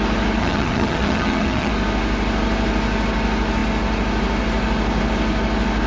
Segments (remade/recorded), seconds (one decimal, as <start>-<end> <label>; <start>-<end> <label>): 0.0-0.4 recorded; 0.4-1.7 remade; 1.7-5.9 recorded

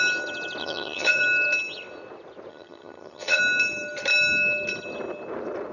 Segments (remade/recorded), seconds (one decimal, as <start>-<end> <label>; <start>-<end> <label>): 0.0-0.6 recorded; 0.6-1.2 remade; 1.2-2.5 recorded; 2.5-3.4 remade; 3.4-5.7 recorded

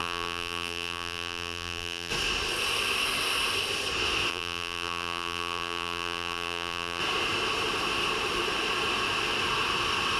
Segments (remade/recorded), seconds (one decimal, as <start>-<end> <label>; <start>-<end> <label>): 0.0-2.1 remade; 2.1-4.3 recorded; 4.3-7.0 remade; 7.0-10.2 recorded

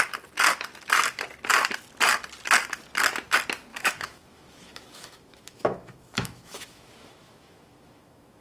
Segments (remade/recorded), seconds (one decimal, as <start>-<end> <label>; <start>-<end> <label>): 0.0-3.7 recorded; 3.7-8.4 remade

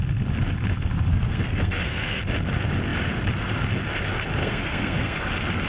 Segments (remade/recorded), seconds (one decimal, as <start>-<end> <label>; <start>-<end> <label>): 0.0-1.1 recorded; 1.1-2.2 remade; 2.2-4.4 recorded; 4.4-5.2 remade; 5.2-5.7 recorded

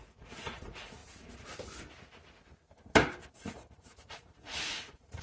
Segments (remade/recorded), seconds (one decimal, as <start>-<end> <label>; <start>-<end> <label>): 0.0-1.0 remade; 1.0-3.3 recorded; 3.3-5.2 remade

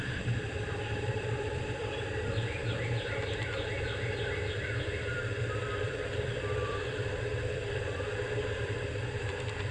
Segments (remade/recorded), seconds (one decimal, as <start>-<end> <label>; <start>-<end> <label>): 0.0-2.6 remade; 2.6-4.8 recorded; 4.8-9.7 remade

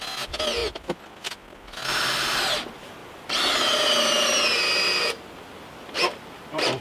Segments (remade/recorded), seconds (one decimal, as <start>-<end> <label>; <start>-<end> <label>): 0.0-6.8 recorded